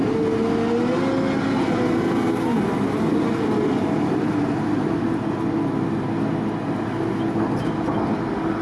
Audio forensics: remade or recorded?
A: recorded